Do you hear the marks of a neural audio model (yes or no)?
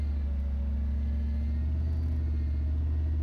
no